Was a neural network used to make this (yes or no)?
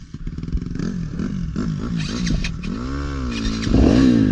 no